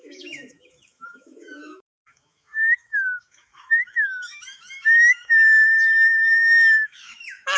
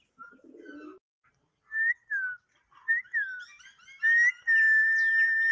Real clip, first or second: second